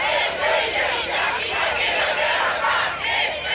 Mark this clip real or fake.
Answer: fake